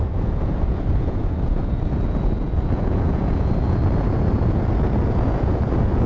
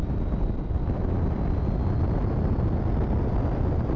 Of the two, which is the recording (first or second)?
second